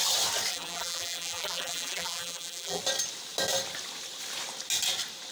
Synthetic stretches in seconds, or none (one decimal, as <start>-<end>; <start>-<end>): 0.5-2.8